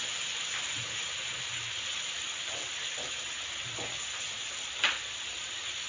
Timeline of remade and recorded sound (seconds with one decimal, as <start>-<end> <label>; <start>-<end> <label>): 0.0-5.9 recorded